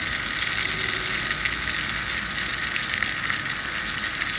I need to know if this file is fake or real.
real